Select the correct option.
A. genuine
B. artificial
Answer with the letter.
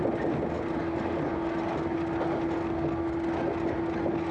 A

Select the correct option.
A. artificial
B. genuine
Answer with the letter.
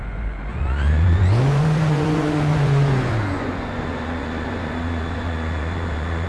A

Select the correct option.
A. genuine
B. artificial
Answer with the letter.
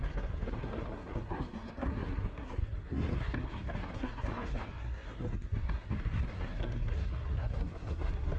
B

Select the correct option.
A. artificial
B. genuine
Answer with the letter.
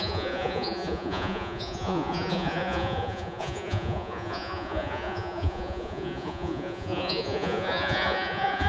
A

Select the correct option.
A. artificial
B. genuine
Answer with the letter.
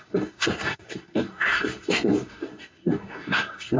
A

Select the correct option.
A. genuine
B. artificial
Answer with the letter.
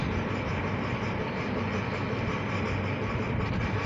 A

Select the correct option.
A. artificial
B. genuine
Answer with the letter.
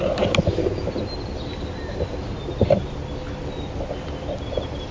B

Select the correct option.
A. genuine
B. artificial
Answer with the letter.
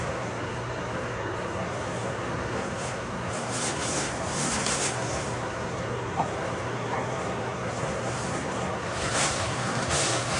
B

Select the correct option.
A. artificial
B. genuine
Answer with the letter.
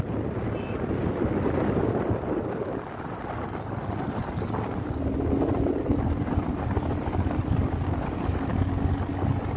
B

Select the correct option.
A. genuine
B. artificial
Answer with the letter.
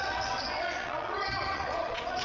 B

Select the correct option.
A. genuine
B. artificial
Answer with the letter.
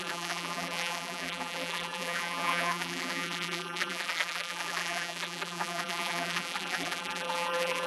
B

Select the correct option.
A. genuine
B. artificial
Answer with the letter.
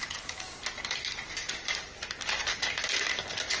A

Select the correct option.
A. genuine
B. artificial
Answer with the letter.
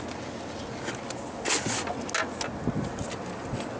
A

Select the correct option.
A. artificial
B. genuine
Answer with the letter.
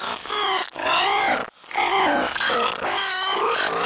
A